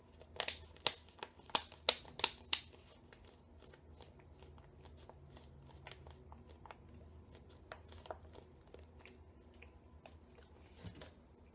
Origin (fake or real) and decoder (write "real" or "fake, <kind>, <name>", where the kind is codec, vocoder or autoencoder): real